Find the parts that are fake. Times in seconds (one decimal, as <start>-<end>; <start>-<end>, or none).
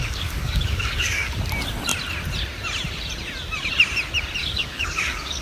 0.0-1.4; 4.4-5.4